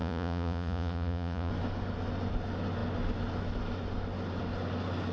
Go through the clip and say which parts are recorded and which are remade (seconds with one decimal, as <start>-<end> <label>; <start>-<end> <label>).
0.0-1.5 remade; 1.5-5.1 recorded